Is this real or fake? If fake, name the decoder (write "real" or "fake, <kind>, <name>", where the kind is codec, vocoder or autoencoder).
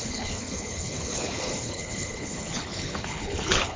fake, codec, HILCodec